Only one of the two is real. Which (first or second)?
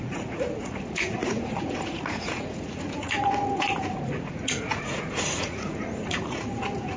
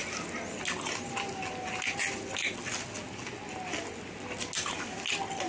second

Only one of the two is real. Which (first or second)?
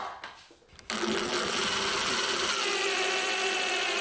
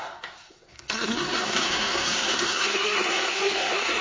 first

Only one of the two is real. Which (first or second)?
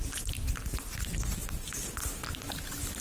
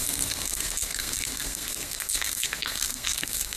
first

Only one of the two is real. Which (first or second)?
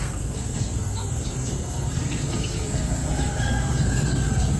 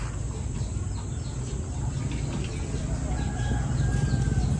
second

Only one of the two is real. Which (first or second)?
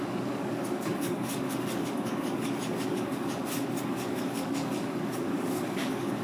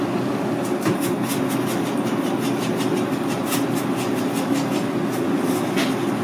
second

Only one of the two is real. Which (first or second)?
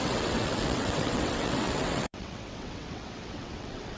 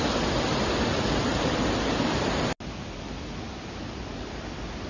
second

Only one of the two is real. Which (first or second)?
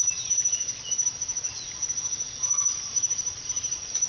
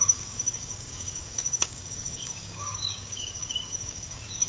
first